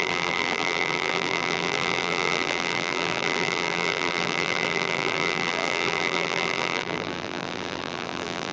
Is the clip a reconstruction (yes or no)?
yes